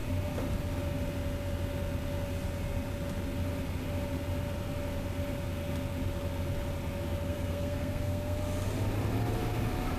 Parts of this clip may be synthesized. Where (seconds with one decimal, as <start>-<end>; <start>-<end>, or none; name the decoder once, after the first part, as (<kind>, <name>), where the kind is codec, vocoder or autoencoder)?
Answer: 7.3-8.4 (codec, SNAC)